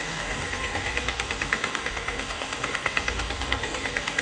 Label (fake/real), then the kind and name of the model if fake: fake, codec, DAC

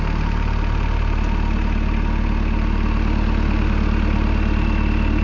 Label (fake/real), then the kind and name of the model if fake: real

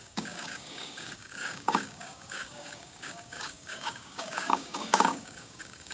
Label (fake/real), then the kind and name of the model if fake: fake, codec, DAC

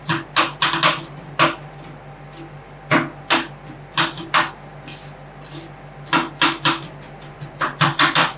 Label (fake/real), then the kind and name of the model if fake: real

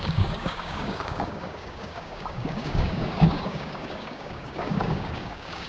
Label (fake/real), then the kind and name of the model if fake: fake, codec, DAC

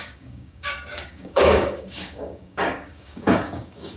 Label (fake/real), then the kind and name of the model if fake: fake, codec, DAC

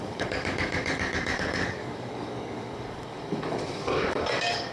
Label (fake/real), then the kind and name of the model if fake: fake, codec, DAC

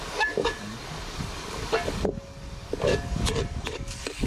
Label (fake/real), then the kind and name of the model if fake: fake, codec, DAC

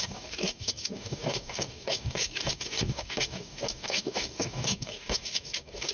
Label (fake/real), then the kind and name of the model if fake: fake, codec, DAC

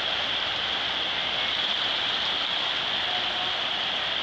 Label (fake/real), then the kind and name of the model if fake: real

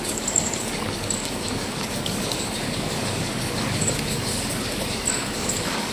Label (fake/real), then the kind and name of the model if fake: fake, codec, DAC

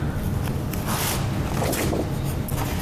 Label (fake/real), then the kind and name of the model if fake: real